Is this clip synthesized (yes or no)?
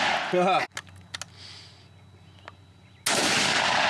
no